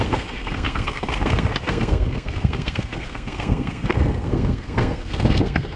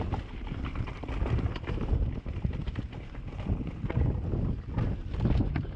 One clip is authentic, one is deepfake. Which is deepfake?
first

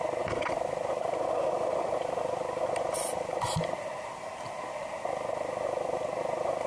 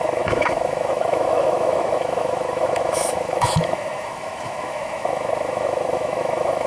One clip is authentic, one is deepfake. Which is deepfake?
second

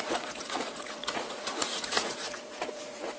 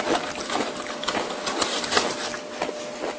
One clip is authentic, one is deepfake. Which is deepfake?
first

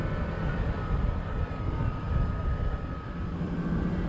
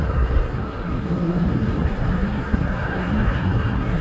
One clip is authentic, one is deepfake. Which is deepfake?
second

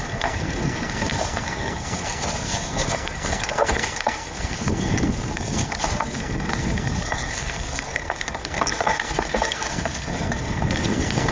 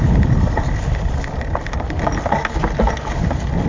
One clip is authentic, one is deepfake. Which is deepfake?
first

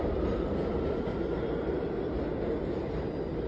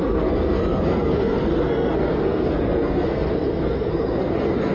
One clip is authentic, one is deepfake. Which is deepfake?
second